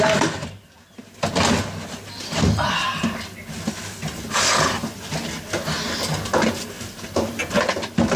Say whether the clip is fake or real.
real